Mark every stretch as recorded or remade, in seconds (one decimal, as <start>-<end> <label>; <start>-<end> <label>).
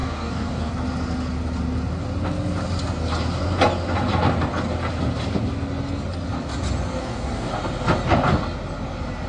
0.0-0.7 remade; 0.7-7.0 recorded; 7.0-7.5 remade; 7.5-9.3 recorded